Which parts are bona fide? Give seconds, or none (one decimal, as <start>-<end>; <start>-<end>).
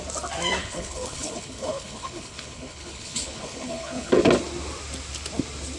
0.0-0.6; 4.1-5.8